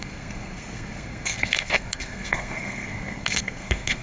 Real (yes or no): no